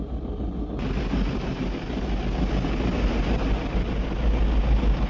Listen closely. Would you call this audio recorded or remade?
recorded